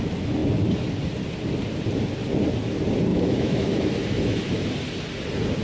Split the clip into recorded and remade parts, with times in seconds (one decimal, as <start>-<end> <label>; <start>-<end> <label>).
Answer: 0.0-3.1 recorded; 3.1-4.7 remade; 4.7-5.6 recorded